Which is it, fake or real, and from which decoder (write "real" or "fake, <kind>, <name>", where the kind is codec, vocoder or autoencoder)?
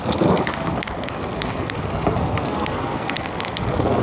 fake, codec, SNAC